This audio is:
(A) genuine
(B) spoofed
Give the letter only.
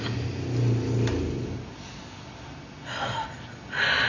A